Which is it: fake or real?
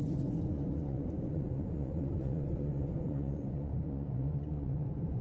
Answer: fake